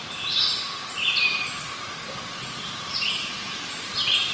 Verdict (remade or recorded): recorded